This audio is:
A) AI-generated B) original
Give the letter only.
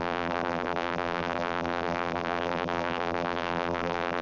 A